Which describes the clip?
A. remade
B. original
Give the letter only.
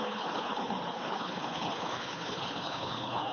A